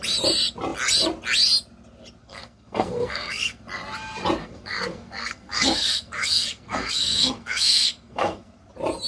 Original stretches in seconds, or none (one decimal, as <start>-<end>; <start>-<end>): 0.0-2.2; 3.6-4.4; 8.6-9.1